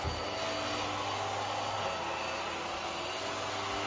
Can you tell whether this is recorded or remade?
recorded